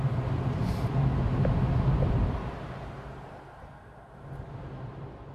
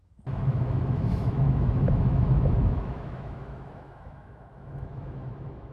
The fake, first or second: second